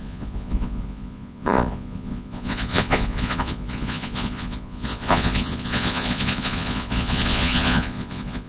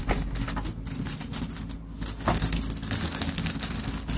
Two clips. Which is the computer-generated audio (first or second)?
first